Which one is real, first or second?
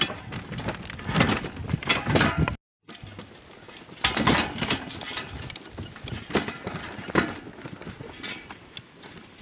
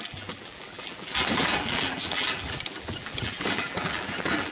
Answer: first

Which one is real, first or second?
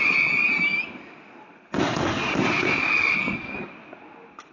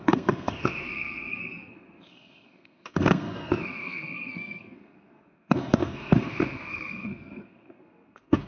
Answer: first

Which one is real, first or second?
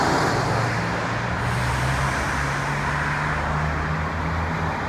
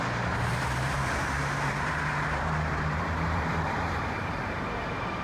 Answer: first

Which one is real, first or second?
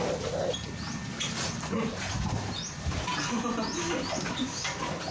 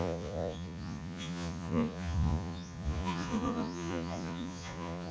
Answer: first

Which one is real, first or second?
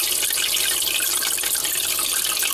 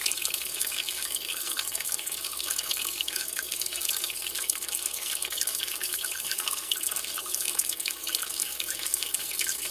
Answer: first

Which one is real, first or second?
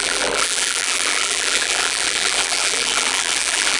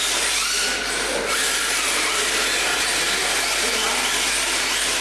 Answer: second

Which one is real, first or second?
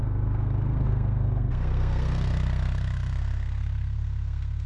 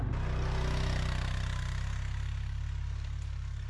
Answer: second